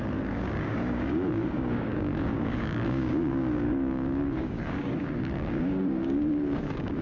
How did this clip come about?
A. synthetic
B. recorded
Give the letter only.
A